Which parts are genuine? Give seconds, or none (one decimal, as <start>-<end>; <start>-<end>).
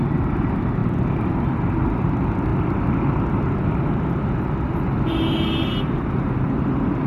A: 0.0-7.1